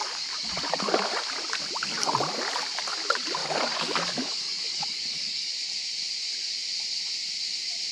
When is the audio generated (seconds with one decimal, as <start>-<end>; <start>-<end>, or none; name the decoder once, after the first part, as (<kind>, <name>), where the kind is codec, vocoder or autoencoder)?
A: 0.0-0.5 (codec, DAC); 3.4-5.5